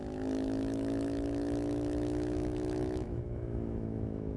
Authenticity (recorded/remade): remade